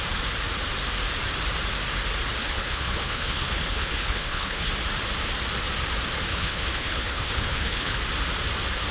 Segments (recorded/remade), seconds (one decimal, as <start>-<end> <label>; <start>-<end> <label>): 0.0-2.4 recorded; 2.4-4.7 remade; 4.7-6.3 recorded; 6.3-8.0 remade; 8.0-8.9 recorded